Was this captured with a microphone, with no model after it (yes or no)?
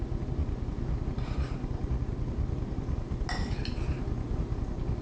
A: yes